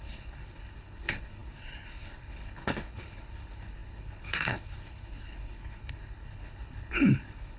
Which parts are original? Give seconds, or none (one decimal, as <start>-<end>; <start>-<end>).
none